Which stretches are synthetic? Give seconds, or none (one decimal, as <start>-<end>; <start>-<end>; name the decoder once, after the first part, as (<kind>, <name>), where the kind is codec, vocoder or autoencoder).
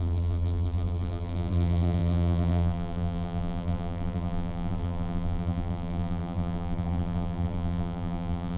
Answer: 0.0-8.6 (vocoder, BigVGAN v2)